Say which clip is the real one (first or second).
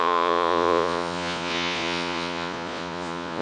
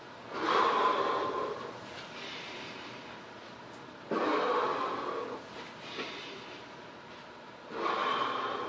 second